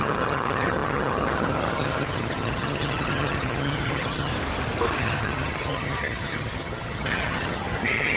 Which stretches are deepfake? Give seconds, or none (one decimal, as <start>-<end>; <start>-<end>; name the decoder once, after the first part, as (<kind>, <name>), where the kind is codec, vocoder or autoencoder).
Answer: 0.0-4.3 (vocoder, HiFi-GAN); 5.0-8.2